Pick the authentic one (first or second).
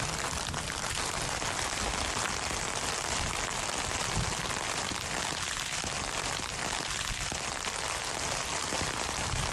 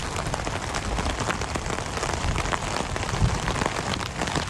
first